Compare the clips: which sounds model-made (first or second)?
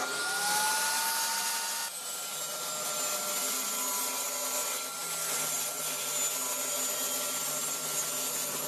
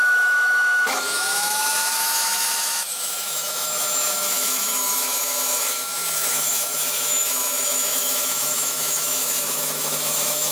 second